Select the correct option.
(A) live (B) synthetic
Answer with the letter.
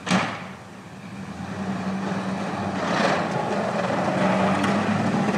A